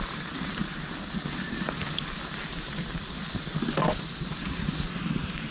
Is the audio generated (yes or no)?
no